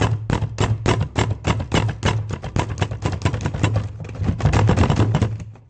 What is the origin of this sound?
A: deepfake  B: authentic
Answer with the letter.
B